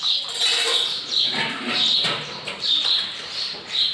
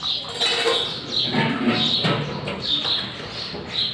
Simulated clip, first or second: first